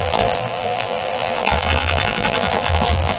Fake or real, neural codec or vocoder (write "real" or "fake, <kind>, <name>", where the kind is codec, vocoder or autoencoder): fake, vocoder, BigVGAN v2